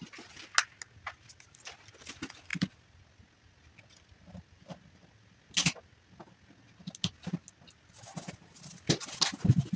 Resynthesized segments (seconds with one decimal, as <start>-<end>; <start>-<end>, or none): none